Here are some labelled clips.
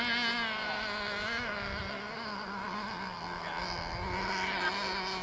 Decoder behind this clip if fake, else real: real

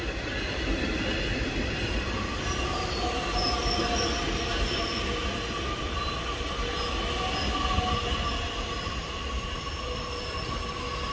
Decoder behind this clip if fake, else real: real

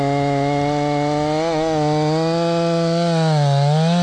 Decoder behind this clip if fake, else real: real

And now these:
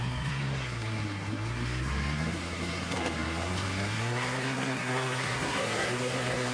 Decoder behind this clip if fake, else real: fake, codec, SNAC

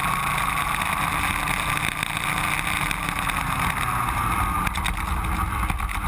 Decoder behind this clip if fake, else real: real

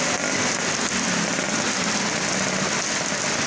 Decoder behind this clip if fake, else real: real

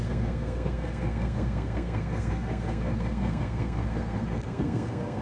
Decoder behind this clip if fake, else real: fake, codec, SNAC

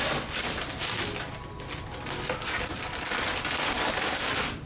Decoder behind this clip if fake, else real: real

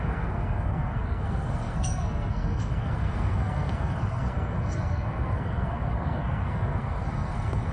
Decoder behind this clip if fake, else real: fake, codec, SNAC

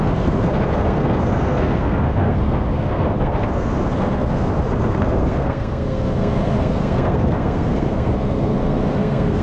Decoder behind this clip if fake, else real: fake, codec, SNAC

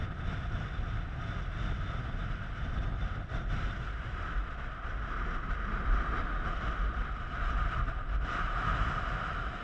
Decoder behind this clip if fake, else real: real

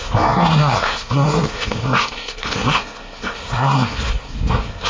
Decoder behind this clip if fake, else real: fake, codec, SNAC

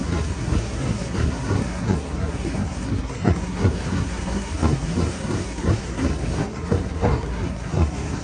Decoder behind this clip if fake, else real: fake, codec, SNAC